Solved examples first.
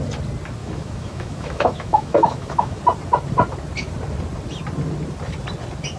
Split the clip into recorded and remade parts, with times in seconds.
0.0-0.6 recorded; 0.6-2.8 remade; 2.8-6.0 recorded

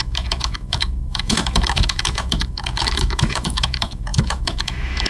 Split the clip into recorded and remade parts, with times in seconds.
0.0-5.1 remade

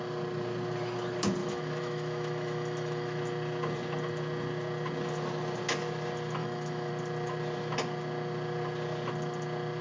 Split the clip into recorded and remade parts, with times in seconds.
0.0-1.4 recorded; 1.4-3.2 remade; 3.2-6.4 recorded; 6.4-6.9 remade; 6.9-9.8 recorded

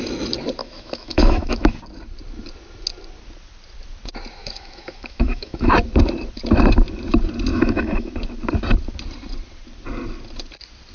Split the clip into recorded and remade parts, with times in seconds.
0.0-0.6 recorded; 0.6-1.7 remade; 1.7-4.4 recorded; 4.4-5.7 remade; 5.7-7.5 recorded; 7.5-8.1 remade; 8.1-10.9 recorded

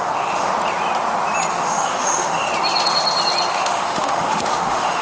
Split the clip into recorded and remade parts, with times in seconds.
0.0-0.5 remade; 0.5-1.5 recorded; 1.5-2.5 remade; 2.5-3.5 recorded; 3.5-5.0 remade